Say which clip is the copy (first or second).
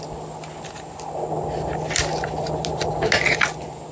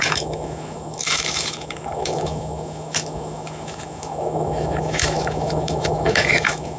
second